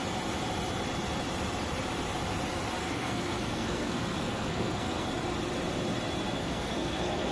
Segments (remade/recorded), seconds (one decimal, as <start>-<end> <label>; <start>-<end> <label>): 0.0-2.8 recorded; 2.8-5.1 remade; 5.1-6.4 recorded; 6.4-7.3 remade